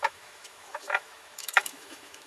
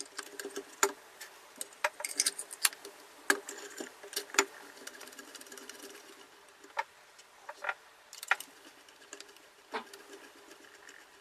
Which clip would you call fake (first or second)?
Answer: first